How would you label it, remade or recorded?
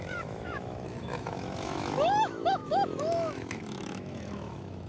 remade